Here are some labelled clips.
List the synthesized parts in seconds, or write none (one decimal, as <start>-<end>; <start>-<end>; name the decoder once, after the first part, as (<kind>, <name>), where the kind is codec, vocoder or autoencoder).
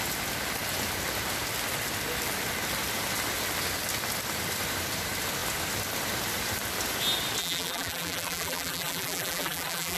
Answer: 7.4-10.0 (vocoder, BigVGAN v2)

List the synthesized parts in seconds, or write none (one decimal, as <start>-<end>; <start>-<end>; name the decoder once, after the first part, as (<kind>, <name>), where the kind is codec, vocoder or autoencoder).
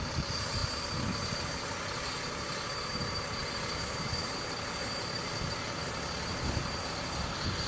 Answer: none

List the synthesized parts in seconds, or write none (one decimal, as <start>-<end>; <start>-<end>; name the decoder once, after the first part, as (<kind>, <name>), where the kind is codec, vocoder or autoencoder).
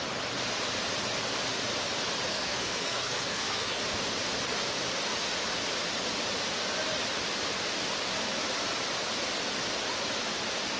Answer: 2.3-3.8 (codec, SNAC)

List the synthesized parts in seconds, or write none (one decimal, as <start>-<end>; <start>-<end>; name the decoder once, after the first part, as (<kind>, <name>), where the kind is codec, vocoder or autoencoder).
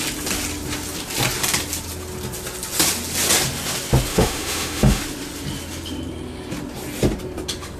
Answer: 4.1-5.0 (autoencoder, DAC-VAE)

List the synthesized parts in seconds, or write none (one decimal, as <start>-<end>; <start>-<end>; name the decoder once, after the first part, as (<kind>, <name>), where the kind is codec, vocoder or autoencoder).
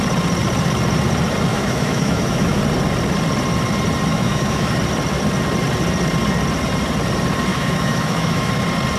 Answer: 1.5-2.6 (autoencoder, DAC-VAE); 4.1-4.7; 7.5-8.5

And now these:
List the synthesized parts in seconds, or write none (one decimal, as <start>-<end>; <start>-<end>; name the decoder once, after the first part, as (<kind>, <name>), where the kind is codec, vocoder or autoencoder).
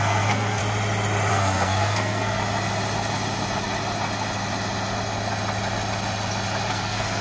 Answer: 0.0-0.6 (codec, SNAC); 1.3-2.4; 6.7-7.2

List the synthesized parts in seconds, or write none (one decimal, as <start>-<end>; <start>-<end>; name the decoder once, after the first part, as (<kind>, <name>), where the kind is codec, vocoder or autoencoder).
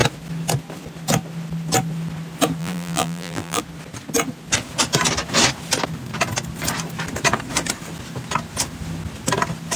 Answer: 2.6-3.6 (vocoder, BigVGAN v2)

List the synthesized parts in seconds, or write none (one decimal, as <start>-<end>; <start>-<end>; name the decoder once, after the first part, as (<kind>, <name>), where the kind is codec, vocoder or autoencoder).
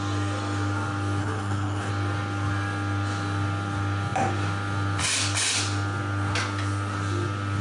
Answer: 1.2-1.9 (codec, HILCodec)